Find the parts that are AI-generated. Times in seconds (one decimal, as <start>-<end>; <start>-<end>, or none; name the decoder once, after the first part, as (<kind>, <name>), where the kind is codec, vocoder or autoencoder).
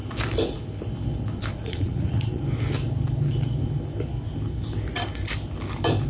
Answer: 1.5-2.4 (vocoder, Vocos)